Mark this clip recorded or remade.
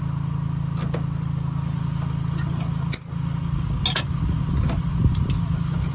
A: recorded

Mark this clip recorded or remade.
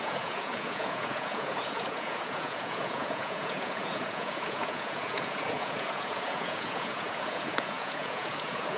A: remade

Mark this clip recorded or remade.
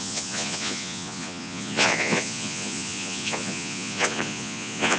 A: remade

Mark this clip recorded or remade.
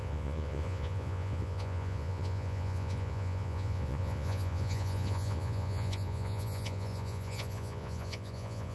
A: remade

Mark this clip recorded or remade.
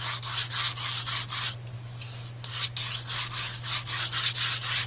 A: recorded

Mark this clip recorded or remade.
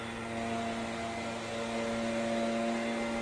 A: recorded